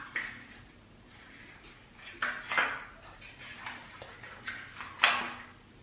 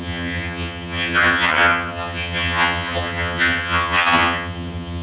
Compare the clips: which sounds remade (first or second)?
second